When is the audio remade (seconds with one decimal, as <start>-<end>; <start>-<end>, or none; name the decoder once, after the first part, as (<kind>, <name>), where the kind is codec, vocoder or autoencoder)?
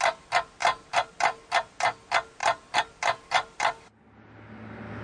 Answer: none